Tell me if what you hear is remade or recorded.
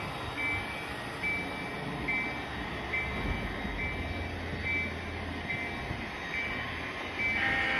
recorded